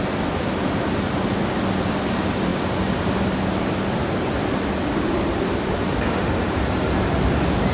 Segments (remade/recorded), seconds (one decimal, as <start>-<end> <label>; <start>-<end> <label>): 0.0-7.7 recorded